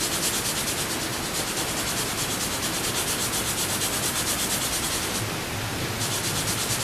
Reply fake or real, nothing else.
real